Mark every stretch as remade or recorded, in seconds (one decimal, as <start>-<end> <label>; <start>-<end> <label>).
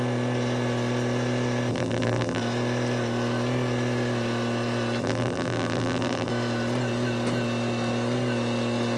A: 0.0-1.7 recorded; 1.7-2.4 remade; 2.4-5.0 recorded; 5.0-6.3 remade; 6.3-9.0 recorded